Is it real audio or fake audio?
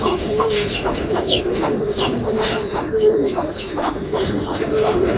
fake